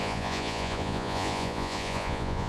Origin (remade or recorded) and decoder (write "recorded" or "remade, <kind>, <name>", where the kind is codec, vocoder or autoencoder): remade, vocoder, Vocos